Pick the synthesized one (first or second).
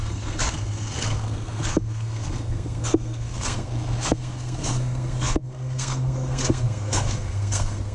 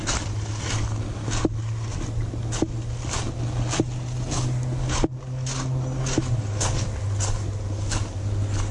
first